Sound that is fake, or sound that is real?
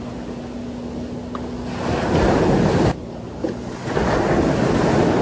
real